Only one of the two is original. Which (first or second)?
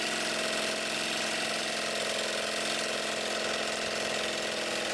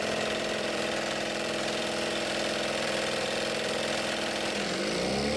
first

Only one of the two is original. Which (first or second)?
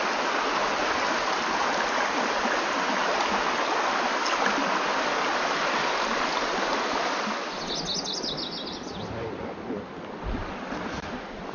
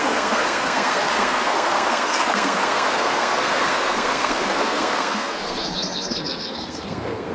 first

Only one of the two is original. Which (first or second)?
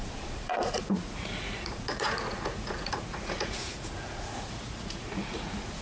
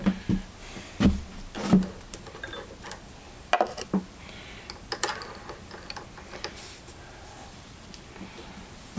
second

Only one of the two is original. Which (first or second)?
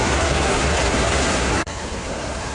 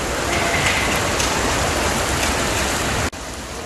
second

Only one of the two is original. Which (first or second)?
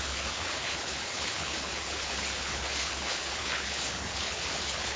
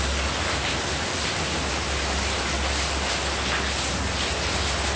second